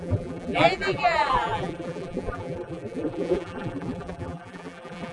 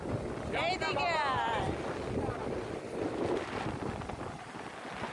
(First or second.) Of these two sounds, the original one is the second